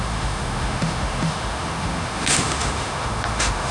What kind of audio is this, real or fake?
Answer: fake